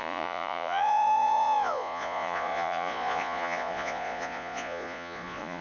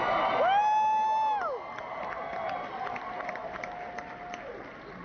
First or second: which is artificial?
first